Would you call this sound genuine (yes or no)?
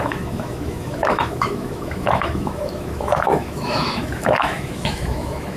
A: no